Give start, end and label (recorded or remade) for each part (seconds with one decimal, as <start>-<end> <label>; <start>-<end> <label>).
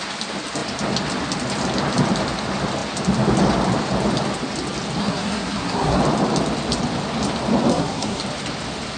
0.0-5.0 recorded; 5.0-6.0 remade; 6.0-7.7 recorded; 7.7-8.2 remade; 8.2-9.0 recorded